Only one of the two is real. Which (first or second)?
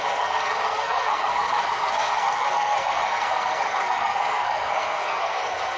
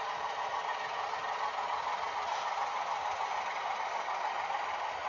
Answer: second